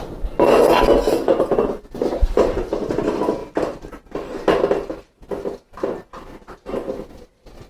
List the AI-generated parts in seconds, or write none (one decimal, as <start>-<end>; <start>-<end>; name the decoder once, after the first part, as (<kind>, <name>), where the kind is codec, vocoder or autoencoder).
none